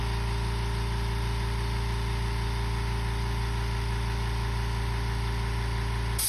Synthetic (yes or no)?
no